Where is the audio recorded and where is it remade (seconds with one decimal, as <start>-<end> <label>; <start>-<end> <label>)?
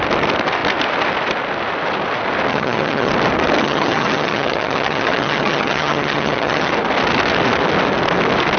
0.0-2.5 recorded; 2.5-3.1 remade; 3.1-3.6 recorded; 3.6-6.7 remade; 6.7-8.6 recorded